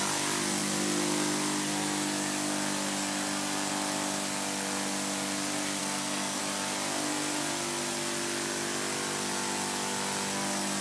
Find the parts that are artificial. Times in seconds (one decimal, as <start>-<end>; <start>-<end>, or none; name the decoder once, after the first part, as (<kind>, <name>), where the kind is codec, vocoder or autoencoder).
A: 5.8-6.4 (codec, SNAC)